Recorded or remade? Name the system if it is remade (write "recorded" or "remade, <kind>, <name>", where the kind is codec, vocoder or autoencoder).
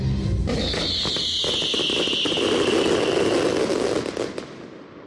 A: recorded